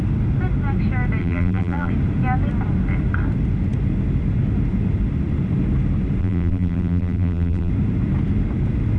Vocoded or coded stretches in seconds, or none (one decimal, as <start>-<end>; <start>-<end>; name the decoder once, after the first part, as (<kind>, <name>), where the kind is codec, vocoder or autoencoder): 1.2-1.9 (vocoder, BigVGAN v2); 6.2-7.7